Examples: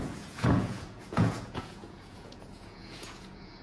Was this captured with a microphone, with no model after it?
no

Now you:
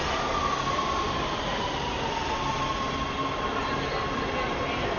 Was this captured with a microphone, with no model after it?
yes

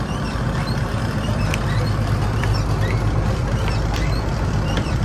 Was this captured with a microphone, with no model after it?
no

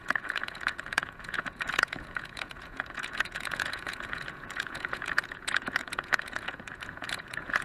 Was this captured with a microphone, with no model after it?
no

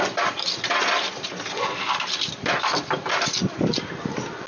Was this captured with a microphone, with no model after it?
yes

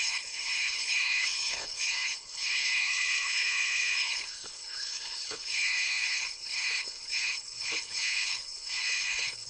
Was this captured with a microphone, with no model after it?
no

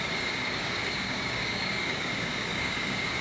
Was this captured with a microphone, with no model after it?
no